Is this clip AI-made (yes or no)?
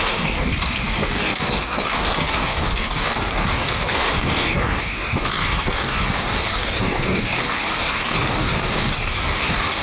yes